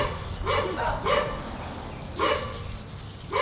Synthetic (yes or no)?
no